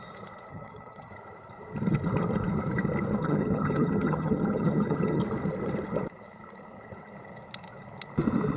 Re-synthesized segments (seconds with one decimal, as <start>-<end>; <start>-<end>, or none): 0.5-1.1; 3.2-5.2

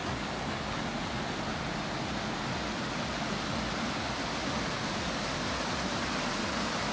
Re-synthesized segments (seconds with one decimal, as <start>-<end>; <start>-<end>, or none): none

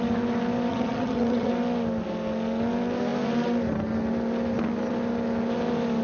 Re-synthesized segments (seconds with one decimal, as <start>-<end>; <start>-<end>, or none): 0.7-1.5